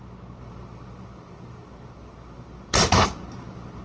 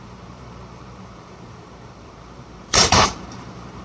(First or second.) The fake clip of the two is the second